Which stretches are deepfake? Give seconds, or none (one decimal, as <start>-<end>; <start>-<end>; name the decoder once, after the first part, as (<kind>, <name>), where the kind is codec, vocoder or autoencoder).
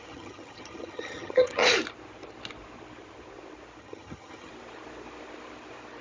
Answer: 0.0-1.6 (vocoder, HiFi-GAN); 3.8-4.5